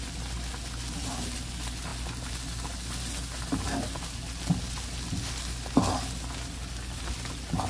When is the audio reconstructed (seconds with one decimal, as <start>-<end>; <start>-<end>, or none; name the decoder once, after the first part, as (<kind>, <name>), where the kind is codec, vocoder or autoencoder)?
none